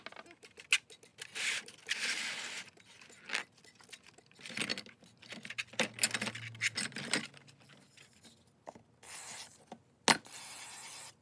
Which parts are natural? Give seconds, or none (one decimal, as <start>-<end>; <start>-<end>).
0.0-11.2